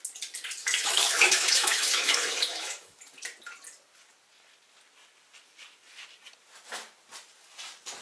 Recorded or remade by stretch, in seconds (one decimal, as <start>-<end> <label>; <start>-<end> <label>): 0.0-0.6 recorded; 0.6-3.0 remade; 3.0-8.0 recorded